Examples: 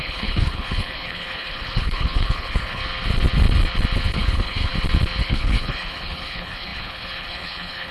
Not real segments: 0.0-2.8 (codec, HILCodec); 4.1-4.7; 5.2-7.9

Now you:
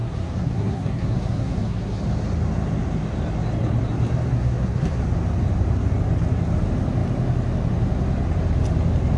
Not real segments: 0.0-2.0 (codec, SNAC); 4.3-5.0

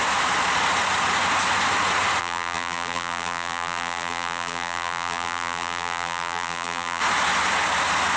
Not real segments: 2.2-7.0 (vocoder, BigVGAN v2)